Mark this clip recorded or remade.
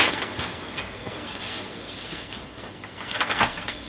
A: remade